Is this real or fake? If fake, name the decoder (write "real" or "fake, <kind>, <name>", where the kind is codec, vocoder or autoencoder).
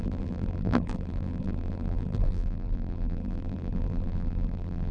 fake, vocoder, BigVGAN v2